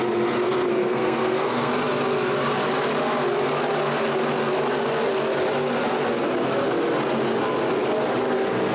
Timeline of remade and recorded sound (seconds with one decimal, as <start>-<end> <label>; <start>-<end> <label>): 0.0-0.7 recorded; 0.7-1.7 remade; 1.7-8.7 recorded